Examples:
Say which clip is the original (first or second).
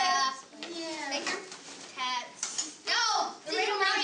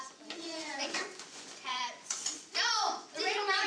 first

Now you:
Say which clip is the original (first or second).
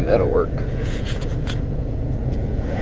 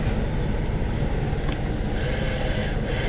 second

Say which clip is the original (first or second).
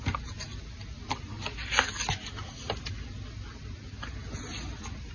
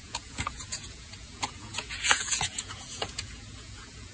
first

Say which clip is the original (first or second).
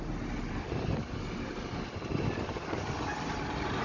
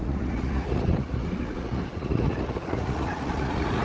first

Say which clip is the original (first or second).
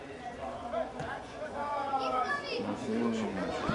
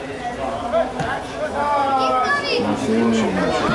second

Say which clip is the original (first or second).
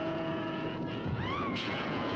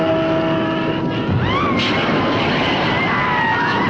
second